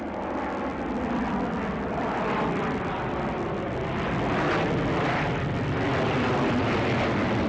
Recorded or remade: recorded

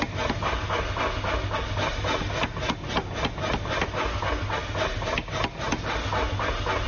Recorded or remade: recorded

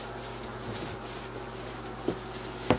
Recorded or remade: recorded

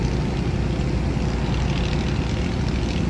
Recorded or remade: recorded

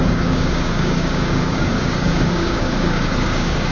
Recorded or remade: remade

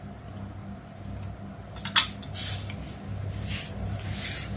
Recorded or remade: recorded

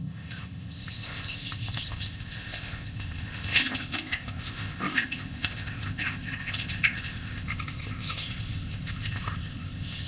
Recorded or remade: remade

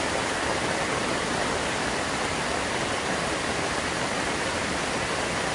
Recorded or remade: recorded